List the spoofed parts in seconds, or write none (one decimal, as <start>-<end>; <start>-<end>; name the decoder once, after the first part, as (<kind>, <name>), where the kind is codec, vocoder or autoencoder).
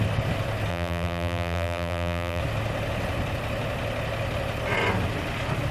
0.7-2.4 (vocoder, BigVGAN v2)